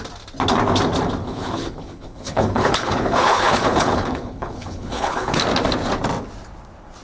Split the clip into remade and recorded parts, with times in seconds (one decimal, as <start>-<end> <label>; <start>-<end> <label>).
0.0-1.2 recorded; 1.2-5.4 remade; 5.4-7.0 recorded